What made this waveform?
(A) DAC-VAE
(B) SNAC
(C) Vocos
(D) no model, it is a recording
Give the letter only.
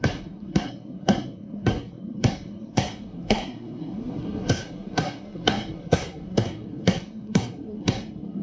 B